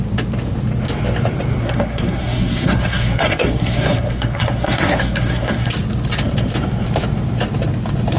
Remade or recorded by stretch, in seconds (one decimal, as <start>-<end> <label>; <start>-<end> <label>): 0.0-1.6 recorded; 1.6-5.7 remade; 5.7-8.2 recorded